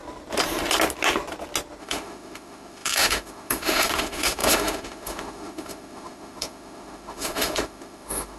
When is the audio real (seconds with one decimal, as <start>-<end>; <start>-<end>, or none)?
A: 0.0-1.8